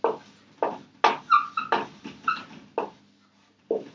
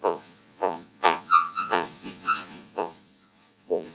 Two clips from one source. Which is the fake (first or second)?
second